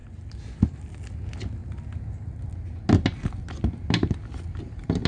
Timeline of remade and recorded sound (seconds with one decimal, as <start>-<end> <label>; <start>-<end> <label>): 0.0-5.1 recorded